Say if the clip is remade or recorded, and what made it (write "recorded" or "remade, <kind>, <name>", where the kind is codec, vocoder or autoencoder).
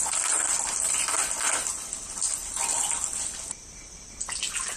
recorded